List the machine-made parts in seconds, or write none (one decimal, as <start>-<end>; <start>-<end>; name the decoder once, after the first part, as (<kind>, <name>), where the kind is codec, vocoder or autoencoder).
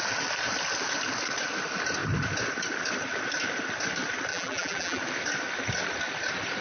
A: 4.3-5.0 (vocoder, BigVGAN v2)